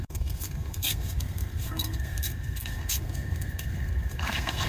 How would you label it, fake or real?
fake